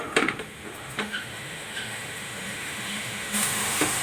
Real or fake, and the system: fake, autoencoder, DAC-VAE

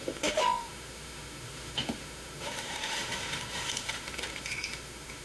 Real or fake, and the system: fake, autoencoder, DAC-VAE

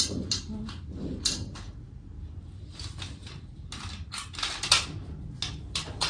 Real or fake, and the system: real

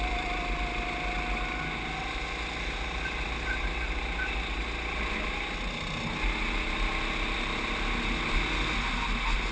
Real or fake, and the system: real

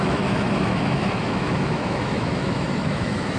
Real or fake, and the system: fake, autoencoder, DAC-VAE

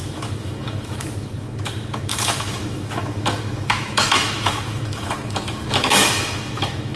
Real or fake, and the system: fake, autoencoder, DAC-VAE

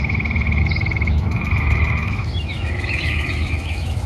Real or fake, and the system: fake, autoencoder, DAC-VAE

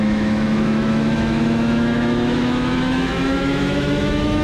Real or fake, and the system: fake, autoencoder, DAC-VAE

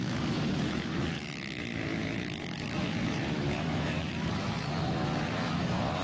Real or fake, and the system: fake, autoencoder, DAC-VAE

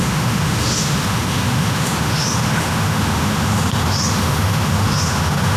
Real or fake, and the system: fake, autoencoder, DAC-VAE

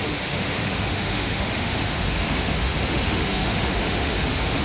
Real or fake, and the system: fake, autoencoder, DAC-VAE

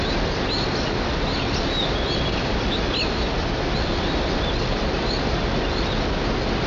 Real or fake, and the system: real